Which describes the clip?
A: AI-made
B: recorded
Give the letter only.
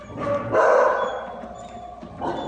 B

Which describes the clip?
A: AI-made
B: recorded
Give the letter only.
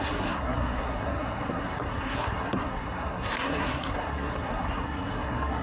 A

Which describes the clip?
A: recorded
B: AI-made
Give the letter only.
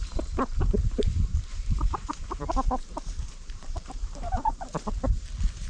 B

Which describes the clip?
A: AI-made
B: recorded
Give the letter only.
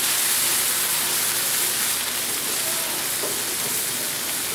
B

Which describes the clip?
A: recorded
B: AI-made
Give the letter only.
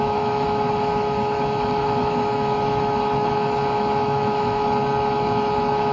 B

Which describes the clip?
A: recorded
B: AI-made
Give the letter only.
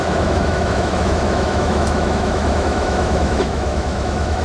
B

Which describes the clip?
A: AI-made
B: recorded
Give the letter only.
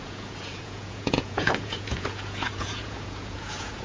A